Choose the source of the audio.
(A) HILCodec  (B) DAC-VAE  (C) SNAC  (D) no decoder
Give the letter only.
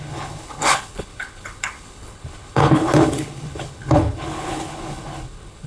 A